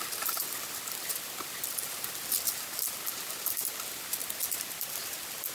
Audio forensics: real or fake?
real